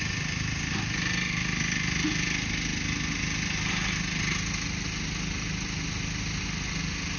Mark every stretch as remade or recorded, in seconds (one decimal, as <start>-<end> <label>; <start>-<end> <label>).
0.0-7.2 recorded